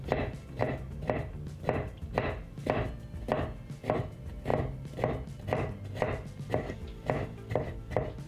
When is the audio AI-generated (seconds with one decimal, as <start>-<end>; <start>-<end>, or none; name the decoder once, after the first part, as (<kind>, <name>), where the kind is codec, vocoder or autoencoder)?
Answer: 0.6-1.5 (vocoder, BigVGAN v2); 4.5-7.8

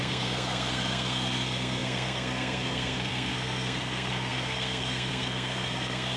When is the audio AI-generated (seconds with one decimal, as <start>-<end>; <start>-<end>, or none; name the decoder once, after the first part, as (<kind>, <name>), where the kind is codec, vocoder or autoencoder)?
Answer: 0.0-6.2 (codec, SNAC)

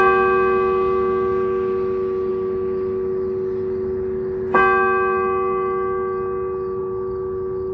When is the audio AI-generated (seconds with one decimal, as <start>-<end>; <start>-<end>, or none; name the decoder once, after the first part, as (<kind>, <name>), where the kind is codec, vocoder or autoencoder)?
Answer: none

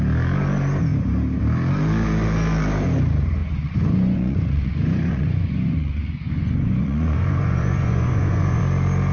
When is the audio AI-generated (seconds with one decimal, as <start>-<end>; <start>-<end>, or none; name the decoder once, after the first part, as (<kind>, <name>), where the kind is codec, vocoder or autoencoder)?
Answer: 3.4-8.6 (vocoder, Vocos)

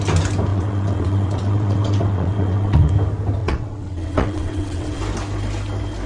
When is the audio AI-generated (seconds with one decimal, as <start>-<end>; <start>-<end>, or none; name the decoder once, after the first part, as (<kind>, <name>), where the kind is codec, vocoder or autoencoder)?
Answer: 0.5-2.9 (vocoder, WaveNeXt); 3.4-5.0

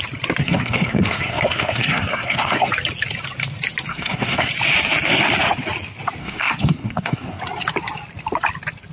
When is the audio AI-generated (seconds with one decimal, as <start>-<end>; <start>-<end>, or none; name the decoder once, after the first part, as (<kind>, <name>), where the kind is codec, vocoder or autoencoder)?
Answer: 0.4-2.7 (codec, SNAC); 3.9-4.5; 6.2-7.4

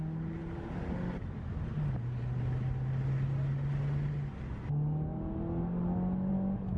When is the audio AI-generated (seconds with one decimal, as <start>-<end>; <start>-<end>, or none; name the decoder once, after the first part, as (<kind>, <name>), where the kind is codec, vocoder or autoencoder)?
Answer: none

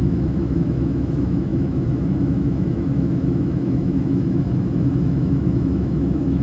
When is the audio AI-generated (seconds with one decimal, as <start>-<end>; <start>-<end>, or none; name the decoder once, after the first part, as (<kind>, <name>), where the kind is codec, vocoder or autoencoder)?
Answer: 0.0-6.4 (autoencoder, DAC-VAE)